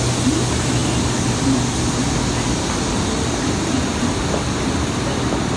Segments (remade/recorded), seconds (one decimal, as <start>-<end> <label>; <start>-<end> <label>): 0.0-5.6 recorded